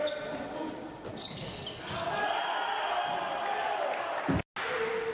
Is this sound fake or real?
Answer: real